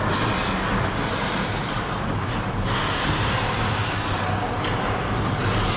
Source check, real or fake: real